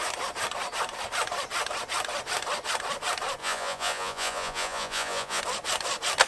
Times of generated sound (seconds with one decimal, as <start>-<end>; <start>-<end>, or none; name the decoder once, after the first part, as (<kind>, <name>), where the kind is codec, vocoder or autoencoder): 3.4-5.4 (vocoder, Vocos)